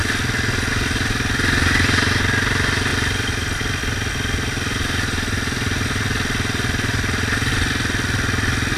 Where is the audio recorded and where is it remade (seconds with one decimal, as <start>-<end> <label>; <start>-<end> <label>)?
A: 0.0-8.8 recorded